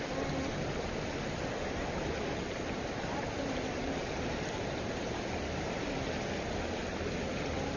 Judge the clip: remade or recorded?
remade